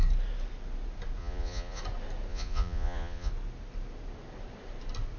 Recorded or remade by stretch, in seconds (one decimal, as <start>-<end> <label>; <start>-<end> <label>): 0.0-1.2 recorded; 1.2-1.8 remade; 1.8-2.3 recorded; 2.3-3.3 remade; 3.3-5.2 recorded